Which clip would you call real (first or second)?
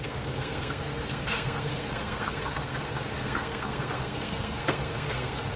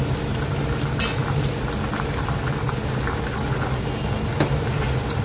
second